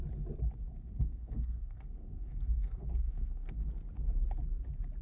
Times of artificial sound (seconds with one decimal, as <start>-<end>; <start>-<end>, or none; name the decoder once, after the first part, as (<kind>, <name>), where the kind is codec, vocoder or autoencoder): 0.7-3.7 (codec, SNAC)